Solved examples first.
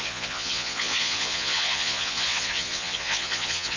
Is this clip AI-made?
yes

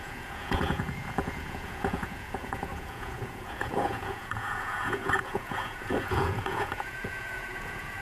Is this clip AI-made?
yes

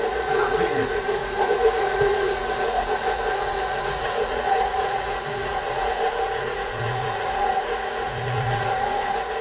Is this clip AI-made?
yes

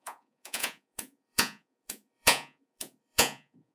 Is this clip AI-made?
yes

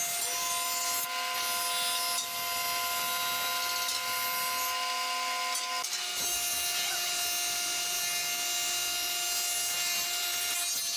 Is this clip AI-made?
no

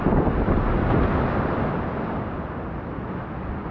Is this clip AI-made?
no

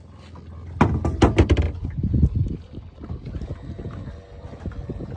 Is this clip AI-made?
no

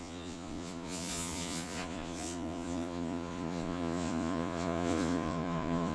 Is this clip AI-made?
yes